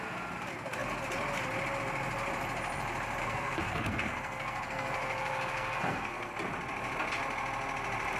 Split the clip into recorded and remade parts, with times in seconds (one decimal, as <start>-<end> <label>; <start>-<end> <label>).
0.0-3.2 recorded; 3.2-6.3 remade; 6.3-8.2 recorded